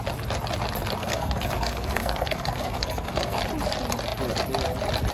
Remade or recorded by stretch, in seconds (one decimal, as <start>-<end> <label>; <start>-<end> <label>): 0.0-1.0 recorded; 1.0-3.4 remade; 3.4-5.1 recorded